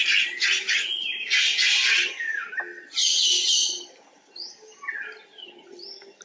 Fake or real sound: real